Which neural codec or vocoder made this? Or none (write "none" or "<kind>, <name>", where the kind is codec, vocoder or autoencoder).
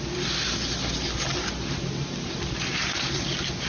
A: none